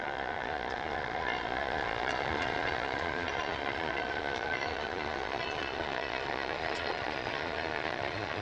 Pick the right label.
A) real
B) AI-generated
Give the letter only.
B